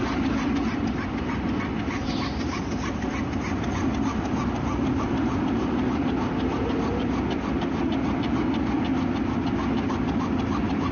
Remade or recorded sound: recorded